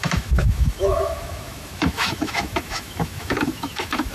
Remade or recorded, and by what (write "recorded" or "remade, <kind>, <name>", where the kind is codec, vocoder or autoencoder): remade, autoencoder, DAC-VAE